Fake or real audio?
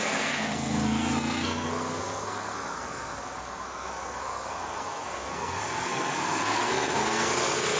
fake